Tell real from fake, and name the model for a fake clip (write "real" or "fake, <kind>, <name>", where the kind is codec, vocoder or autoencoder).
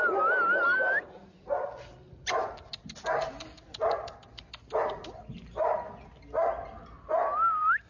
real